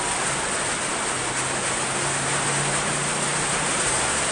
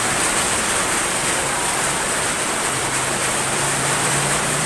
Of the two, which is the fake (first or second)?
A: second